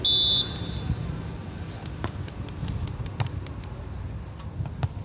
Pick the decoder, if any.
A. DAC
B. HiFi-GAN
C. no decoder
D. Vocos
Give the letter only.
C